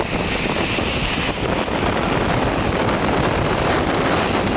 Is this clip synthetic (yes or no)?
no